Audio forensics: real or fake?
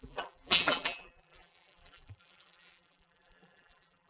fake